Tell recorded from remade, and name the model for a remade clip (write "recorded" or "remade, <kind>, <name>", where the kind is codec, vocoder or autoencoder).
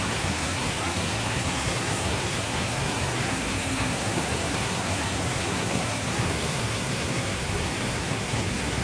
remade, codec, SNAC